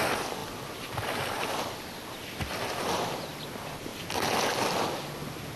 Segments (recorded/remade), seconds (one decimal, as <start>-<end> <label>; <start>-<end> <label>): 0.0-0.4 recorded; 0.4-3.0 remade; 3.0-3.9 recorded; 3.9-5.0 remade; 5.0-5.6 recorded